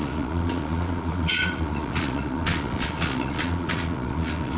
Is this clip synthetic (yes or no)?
yes